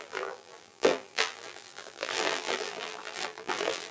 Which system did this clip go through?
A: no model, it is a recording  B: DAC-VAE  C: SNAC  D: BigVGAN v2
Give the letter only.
D